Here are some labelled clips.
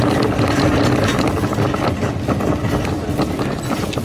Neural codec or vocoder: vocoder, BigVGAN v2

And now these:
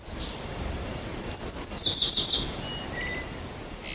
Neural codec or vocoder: none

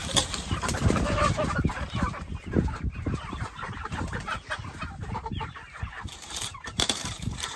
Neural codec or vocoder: vocoder, BigVGAN v2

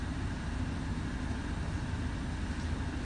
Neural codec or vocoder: none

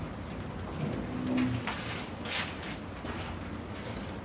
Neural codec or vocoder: none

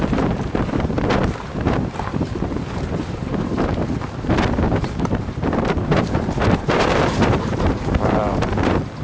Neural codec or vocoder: vocoder, BigVGAN v2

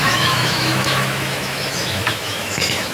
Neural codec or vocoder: autoencoder, DAC-VAE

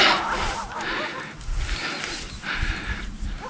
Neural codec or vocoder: none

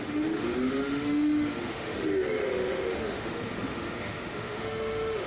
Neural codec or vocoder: autoencoder, DAC-VAE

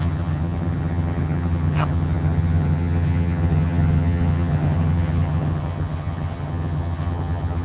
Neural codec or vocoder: vocoder, HiFi-GAN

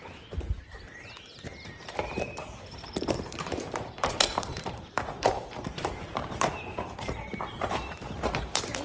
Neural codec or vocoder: vocoder, BigVGAN v2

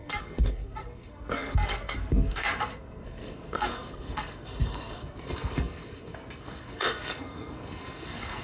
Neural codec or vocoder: codec, SNAC